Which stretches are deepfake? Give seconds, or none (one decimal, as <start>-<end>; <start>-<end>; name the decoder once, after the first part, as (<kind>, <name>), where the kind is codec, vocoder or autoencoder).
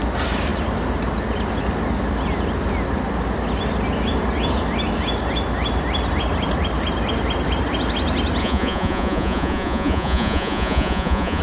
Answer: 8.4-11.4 (vocoder, Vocos)